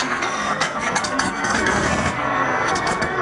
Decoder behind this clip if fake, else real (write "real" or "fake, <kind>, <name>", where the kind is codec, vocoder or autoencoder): fake, codec, SNAC